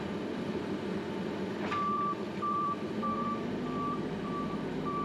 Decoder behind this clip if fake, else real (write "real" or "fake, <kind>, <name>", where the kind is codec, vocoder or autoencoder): fake, vocoder, BigVGAN v2